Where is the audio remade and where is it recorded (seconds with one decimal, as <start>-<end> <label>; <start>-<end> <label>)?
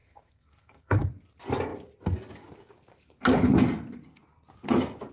0.0-1.0 remade; 1.0-5.1 recorded